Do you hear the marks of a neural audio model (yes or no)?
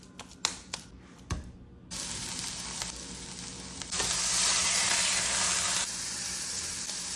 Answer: no